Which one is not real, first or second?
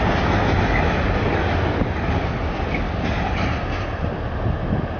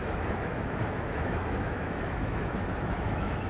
second